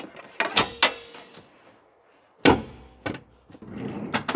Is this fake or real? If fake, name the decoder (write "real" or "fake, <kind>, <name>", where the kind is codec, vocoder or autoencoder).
real